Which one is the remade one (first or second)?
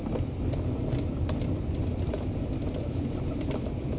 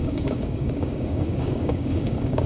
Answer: second